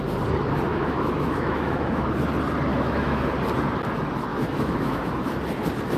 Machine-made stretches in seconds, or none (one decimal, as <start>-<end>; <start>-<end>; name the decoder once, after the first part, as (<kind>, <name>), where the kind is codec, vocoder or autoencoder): 0.7-2.1 (autoencoder, DAC-VAE); 2.7-3.2; 4.3-5.2

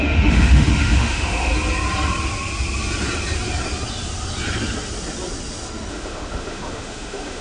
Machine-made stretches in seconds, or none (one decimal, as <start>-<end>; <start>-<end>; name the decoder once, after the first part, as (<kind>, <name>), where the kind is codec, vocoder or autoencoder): 0.0-1.5 (autoencoder, DAC-VAE); 5.9-7.4

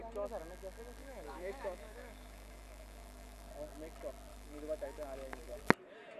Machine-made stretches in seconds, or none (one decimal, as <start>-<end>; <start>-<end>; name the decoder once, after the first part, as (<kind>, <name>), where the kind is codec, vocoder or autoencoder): 1.0-3.5 (autoencoder, DAC-VAE); 4.3-5.6

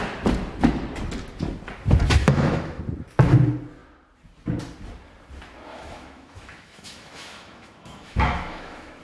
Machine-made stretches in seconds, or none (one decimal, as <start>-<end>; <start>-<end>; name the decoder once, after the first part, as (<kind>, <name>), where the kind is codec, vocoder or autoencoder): 2.2-2.8 (autoencoder, DAC-VAE); 5.7-9.0

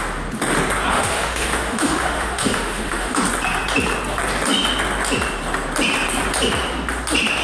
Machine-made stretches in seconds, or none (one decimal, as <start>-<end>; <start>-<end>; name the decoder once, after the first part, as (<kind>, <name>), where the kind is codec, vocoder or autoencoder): 0.9-3.2 (autoencoder, DAC-VAE)